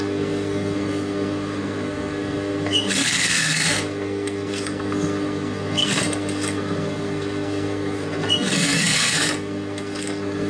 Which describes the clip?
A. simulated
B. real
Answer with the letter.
A